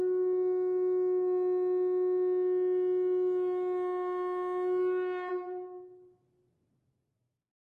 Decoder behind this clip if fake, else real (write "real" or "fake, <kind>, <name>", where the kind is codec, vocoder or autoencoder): real